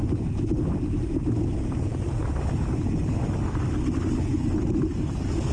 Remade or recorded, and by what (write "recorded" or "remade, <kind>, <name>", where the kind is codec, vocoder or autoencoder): recorded